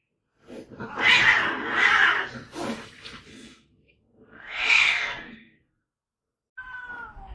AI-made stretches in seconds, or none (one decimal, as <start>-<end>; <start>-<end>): 3.3-5.8